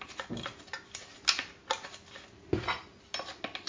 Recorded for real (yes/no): yes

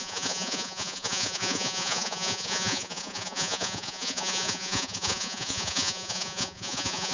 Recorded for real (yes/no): no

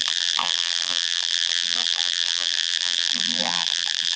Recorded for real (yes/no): no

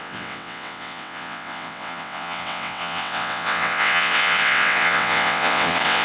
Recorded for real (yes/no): no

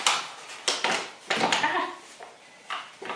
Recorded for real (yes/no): yes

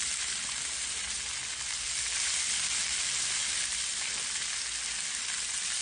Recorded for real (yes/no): yes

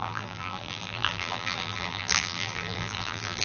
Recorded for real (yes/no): no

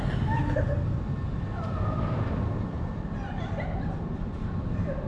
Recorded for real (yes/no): yes